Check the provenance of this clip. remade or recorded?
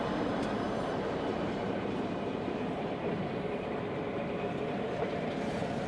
remade